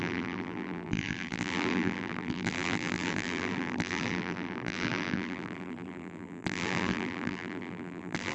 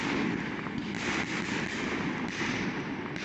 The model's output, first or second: first